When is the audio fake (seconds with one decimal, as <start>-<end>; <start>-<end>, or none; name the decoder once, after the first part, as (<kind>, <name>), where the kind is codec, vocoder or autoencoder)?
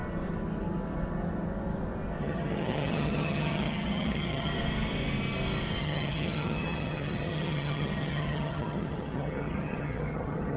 2.2-4.5 (vocoder, HiFi-GAN); 5.8-10.6